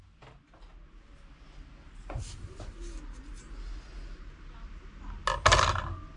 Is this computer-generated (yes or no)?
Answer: no